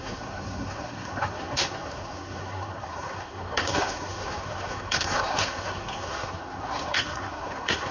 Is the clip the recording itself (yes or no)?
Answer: no